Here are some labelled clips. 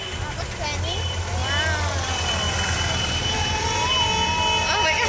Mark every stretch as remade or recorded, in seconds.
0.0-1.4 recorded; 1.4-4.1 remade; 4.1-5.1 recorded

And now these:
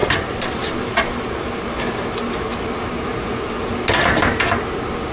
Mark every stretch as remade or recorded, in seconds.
0.0-1.5 remade; 1.5-2.5 recorded; 2.5-3.7 remade; 3.7-5.1 recorded

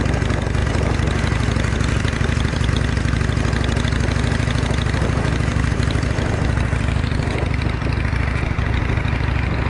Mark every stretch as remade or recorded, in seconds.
0.0-0.6 recorded; 0.6-2.7 remade; 2.7-5.5 recorded; 5.5-8.2 remade; 8.2-9.7 recorded

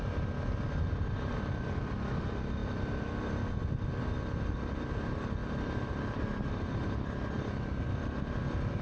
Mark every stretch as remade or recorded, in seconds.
0.0-2.6 recorded; 2.6-3.2 remade; 3.2-5.4 recorded; 5.4-8.4 remade; 8.4-8.8 recorded